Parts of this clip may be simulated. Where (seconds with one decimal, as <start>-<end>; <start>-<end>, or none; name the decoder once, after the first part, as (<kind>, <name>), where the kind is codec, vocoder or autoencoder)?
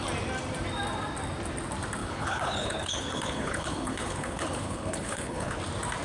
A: 2.0-5.6 (codec, HILCodec)